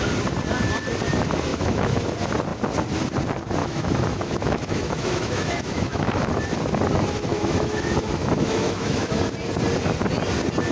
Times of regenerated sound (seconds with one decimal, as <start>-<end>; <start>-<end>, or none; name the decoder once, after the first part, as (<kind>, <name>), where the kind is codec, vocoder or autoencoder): 1.5-2.0 (autoencoder, DAC-VAE); 3.6-6.3; 7.3-9.2